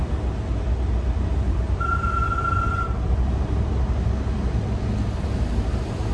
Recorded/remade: recorded